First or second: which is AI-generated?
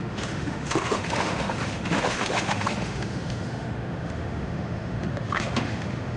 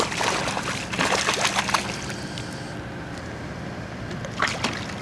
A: first